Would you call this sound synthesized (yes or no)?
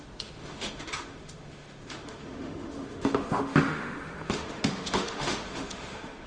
yes